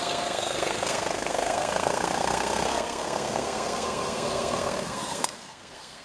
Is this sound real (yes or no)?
no